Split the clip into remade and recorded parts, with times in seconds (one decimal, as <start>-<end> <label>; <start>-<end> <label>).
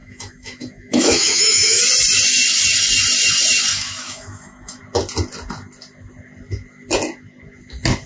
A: 0.0-1.8 remade; 1.8-3.7 recorded; 3.7-4.8 remade; 4.8-8.1 recorded